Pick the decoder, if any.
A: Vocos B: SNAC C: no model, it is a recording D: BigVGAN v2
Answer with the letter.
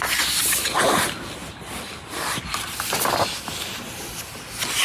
C